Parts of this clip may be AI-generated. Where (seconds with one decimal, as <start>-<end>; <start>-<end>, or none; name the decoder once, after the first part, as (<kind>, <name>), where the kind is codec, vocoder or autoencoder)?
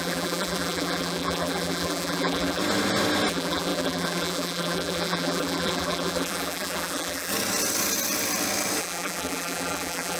0.0-2.6 (vocoder, BigVGAN v2); 3.3-7.3; 8.8-10.2